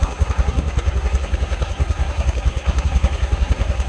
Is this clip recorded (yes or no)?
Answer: no